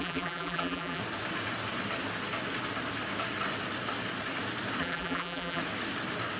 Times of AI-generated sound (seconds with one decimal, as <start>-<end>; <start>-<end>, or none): 0.0-1.0; 4.8-5.6